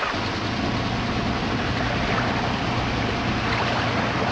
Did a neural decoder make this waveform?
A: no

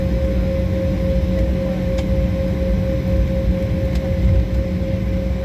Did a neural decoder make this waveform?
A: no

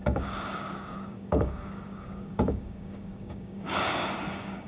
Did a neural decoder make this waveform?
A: yes